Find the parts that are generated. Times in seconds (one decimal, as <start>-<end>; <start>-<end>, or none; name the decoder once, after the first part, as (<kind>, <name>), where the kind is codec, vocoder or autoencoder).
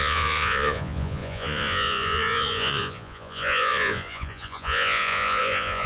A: 0.0-5.9 (vocoder, Vocos)